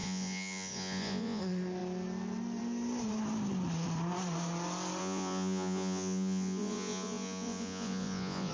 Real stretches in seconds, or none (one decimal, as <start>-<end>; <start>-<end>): 1.4-5.0